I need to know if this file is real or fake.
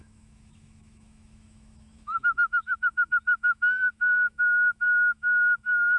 fake